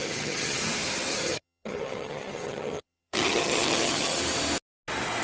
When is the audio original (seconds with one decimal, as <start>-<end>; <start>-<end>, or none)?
0.6-1.1; 4.2-5.2